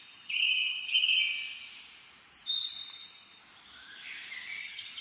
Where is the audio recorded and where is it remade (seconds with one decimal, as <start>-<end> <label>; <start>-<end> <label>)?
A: 0.0-1.2 remade; 1.2-3.0 recorded; 3.0-3.4 remade; 3.4-4.6 recorded; 4.6-5.0 remade